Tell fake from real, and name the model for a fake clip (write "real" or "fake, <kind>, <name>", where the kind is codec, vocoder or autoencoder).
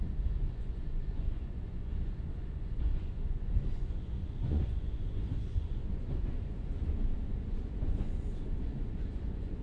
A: fake, vocoder, Vocos